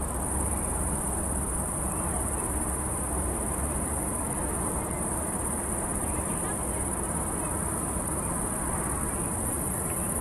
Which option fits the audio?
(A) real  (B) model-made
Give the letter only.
B